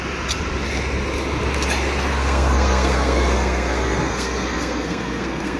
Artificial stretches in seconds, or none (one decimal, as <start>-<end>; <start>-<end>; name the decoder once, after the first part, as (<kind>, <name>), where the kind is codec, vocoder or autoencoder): 2.1-5.6 (codec, SNAC)